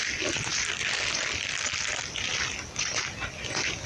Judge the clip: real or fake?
real